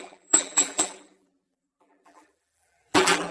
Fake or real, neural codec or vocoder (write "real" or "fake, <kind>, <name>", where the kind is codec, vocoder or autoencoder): fake, vocoder, BigVGAN v2